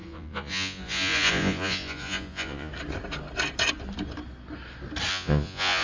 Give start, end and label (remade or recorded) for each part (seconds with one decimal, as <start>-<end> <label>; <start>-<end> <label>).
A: 0.0-2.7 remade; 2.7-5.1 recorded; 5.1-5.8 remade